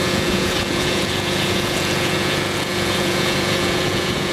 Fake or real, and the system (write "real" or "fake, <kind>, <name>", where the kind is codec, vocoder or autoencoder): fake, vocoder, Vocos